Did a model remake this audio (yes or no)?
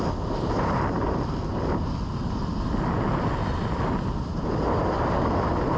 no